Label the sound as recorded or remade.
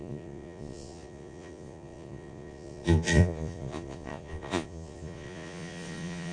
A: remade